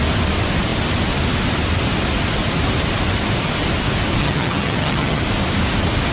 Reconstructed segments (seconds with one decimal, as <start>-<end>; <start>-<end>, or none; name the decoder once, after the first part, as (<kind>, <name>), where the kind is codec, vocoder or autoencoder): 4.2-5.2 (vocoder, HiFi-GAN)